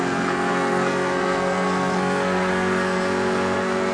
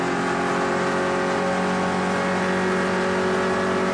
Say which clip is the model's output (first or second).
first